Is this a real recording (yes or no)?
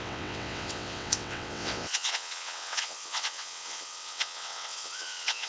no